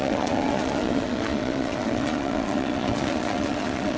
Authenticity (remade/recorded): remade